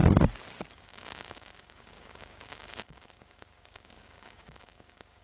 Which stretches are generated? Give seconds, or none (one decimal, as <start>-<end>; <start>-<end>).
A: 0.7-5.2